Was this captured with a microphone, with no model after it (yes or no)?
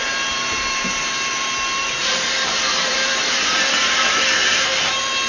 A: no